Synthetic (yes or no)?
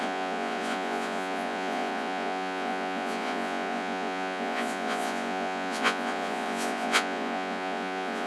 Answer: yes